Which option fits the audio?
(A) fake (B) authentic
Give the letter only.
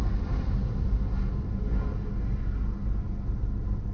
B